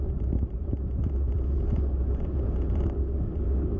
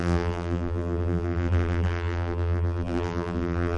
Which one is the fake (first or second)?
second